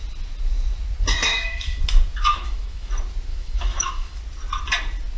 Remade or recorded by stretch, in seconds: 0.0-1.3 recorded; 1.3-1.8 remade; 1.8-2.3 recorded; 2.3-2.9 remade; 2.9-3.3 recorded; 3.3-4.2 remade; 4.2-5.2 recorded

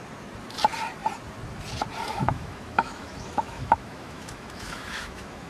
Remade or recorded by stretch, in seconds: 0.0-2.1 recorded; 2.1-5.5 remade

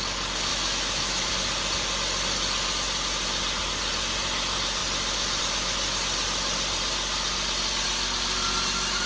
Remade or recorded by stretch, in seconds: 0.0-0.5 recorded; 0.5-1.3 remade; 1.3-9.1 recorded

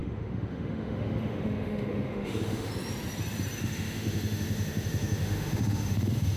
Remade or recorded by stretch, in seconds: 0.0-2.7 remade; 2.7-3.6 recorded; 3.6-6.4 remade

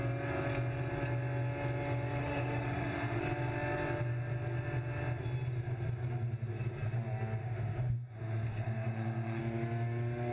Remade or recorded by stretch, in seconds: 0.0-2.2 recorded; 2.2-3.2 remade; 3.2-7.4 recorded; 7.4-9.4 remade; 9.4-10.3 recorded

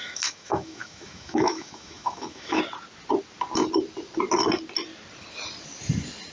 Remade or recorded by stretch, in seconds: 0.0-2.6 remade; 2.6-6.3 recorded

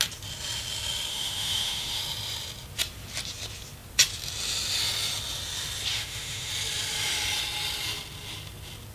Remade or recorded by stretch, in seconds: 0.0-1.1 recorded; 1.1-2.0 remade; 2.0-5.9 recorded; 5.9-6.5 remade; 6.5-8.9 recorded